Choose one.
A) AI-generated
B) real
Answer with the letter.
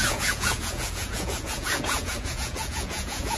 A